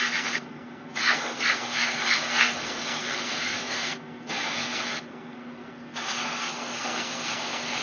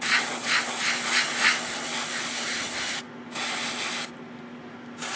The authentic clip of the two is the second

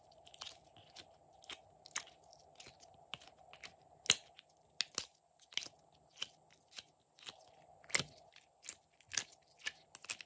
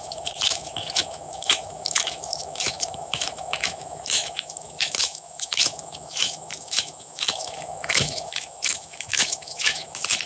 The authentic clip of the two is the first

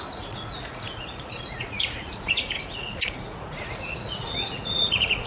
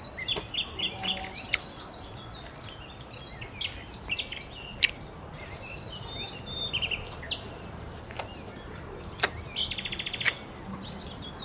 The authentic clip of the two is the second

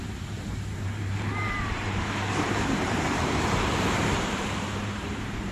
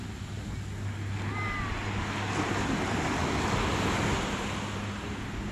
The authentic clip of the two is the second